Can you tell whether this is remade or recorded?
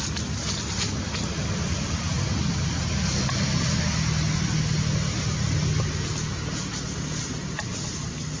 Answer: recorded